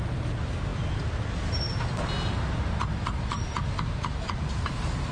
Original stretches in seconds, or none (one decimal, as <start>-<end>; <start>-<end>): 0.0-5.1